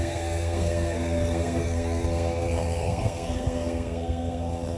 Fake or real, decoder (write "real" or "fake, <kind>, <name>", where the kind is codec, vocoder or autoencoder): fake, codec, SNAC